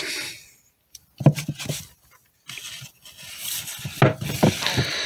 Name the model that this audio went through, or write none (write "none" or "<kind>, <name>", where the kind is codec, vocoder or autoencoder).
none